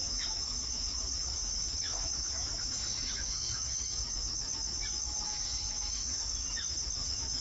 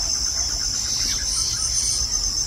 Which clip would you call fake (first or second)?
first